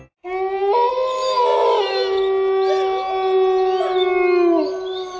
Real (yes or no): yes